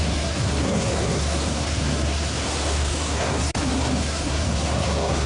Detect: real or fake fake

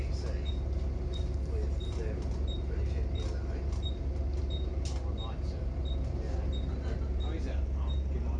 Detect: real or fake real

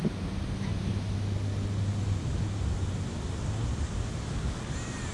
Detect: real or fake real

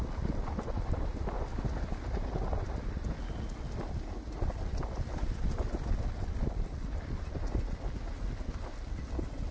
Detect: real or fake real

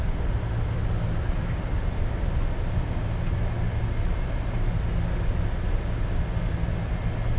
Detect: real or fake real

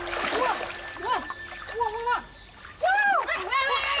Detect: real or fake real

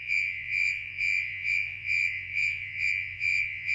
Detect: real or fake fake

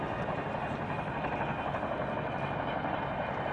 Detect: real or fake real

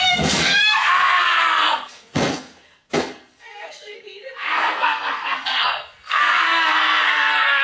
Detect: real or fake fake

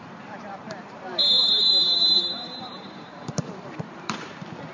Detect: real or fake fake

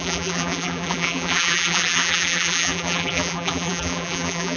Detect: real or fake fake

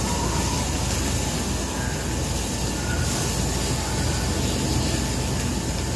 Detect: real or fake real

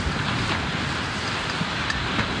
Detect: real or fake real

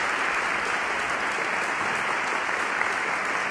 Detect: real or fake real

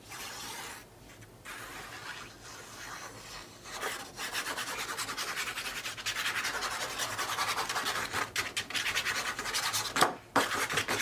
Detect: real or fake real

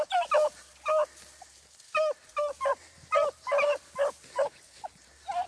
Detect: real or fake real